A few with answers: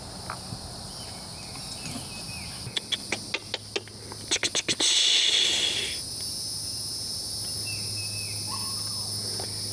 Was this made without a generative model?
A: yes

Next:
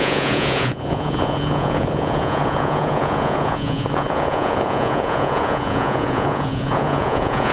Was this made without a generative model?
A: no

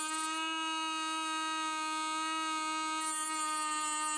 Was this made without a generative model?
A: yes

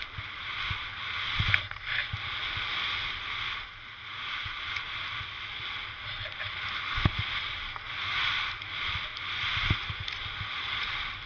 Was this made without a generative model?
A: yes